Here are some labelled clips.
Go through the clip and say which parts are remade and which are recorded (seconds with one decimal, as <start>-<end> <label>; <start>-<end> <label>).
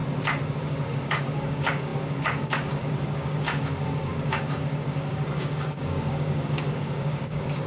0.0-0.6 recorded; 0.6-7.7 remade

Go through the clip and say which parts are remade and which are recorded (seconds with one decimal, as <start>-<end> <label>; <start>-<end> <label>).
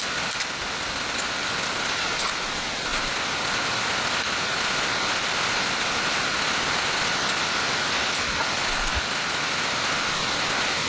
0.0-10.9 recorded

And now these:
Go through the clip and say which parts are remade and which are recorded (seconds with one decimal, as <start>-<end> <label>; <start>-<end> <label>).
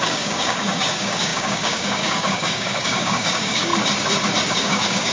0.0-3.7 remade; 3.7-4.5 recorded; 4.5-5.1 remade